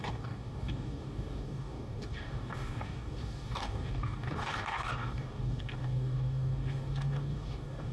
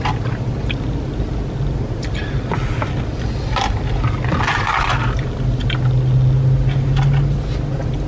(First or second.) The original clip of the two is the second